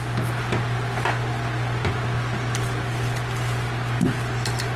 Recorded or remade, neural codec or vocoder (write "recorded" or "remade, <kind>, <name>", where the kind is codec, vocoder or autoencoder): recorded